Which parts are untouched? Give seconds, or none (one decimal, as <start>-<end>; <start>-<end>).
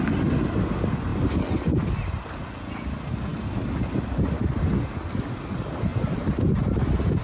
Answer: 0.0-3.3; 4.6-7.2